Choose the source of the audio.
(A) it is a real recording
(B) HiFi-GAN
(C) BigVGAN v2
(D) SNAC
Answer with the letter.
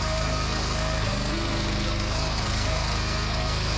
D